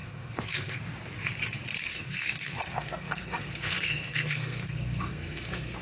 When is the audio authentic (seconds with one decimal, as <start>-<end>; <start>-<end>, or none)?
0.8-1.9